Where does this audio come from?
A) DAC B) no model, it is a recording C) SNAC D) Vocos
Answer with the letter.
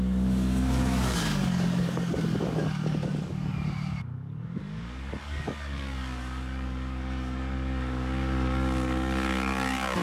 A